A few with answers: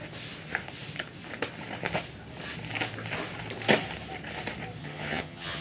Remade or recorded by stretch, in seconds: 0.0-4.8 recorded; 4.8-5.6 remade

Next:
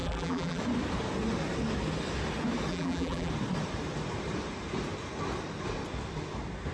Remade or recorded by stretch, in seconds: 0.0-0.6 remade; 0.6-2.7 recorded; 2.7-3.3 remade; 3.3-6.7 recorded

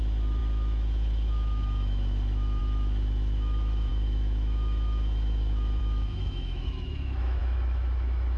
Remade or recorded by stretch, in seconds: 0.0-8.4 remade

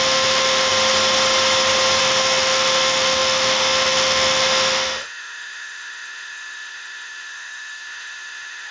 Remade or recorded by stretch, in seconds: 0.0-0.7 remade; 0.7-2.0 recorded; 2.0-8.7 remade

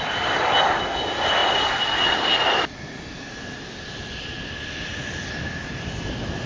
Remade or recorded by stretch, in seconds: 0.0-6.5 recorded

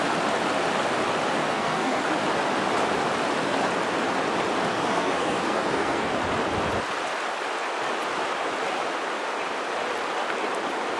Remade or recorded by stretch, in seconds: 0.0-1.4 recorded; 1.4-2.0 remade; 2.0-4.7 recorded; 4.7-6.1 remade; 6.1-11.0 recorded

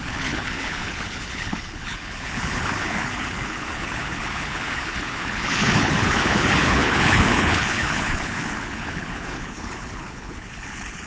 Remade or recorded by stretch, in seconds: 0.0-11.1 remade

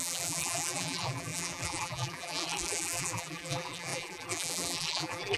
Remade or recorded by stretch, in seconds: 0.0-5.4 remade